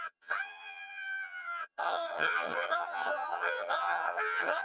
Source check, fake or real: fake